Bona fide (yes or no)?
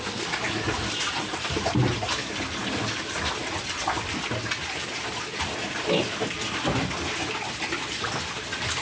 yes